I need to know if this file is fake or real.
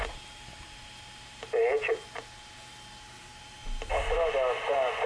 real